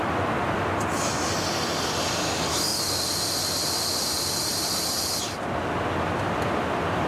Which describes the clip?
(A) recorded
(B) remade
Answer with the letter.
A